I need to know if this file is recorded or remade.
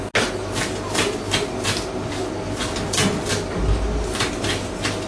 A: recorded